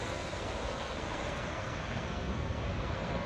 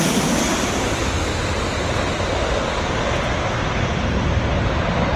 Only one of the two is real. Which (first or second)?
second